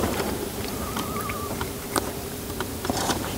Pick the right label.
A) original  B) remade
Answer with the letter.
B